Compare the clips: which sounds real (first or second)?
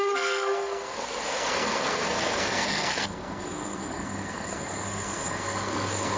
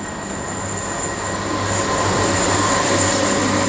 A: second